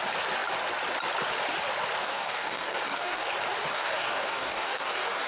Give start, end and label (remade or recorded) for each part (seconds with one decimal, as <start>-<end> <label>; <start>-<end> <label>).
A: 0.0-2.0 recorded; 2.0-3.3 remade; 3.3-3.7 recorded; 3.7-5.3 remade